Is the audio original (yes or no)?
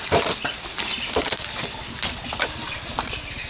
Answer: yes